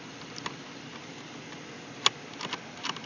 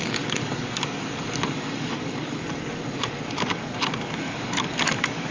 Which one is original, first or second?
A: first